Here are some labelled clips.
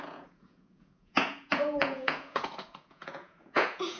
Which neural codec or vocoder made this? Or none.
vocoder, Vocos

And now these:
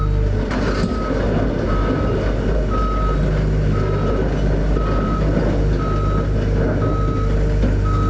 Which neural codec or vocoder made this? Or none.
none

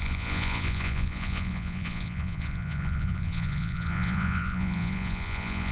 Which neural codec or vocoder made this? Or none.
vocoder, Vocos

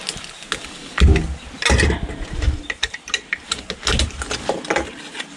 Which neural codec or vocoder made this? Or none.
none